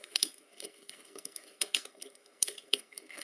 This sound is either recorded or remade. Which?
remade